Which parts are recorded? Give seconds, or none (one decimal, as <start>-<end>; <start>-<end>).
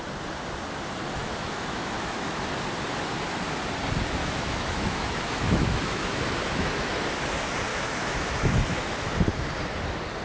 0.0-1.2; 2.5-4.2; 7.1-7.7; 9.1-10.2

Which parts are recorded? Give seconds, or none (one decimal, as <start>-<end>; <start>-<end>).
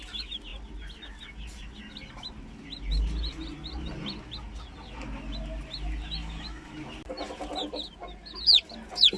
0.0-6.2; 6.7-9.2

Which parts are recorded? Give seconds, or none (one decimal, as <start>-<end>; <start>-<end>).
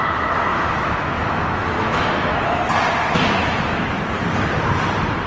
0.0-0.5; 2.7-3.4; 4.1-5.3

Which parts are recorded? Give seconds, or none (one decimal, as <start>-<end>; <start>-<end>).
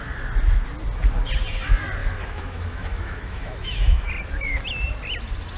0.0-2.0; 4.1-5.6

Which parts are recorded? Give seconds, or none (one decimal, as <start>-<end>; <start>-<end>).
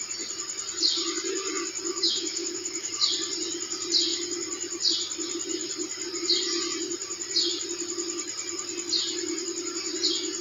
0.0-1.9; 2.9-10.4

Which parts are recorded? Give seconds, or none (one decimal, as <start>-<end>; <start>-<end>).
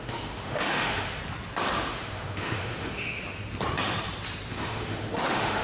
1.2-1.9; 3.2-4.5